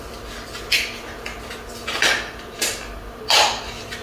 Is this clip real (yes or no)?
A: yes